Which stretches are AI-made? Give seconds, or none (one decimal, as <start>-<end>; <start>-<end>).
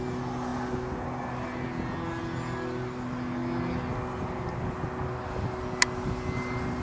none